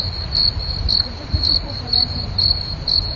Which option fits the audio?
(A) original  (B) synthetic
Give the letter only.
B